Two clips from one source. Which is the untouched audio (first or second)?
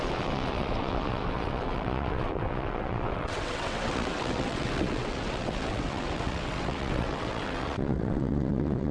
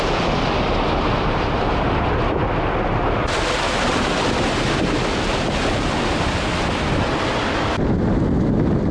second